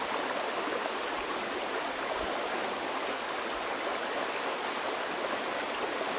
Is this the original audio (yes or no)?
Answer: yes